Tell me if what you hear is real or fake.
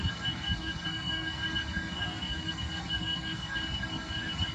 fake